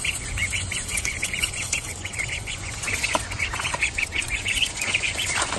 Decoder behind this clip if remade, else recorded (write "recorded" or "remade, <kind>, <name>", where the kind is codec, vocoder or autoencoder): remade, vocoder, Vocos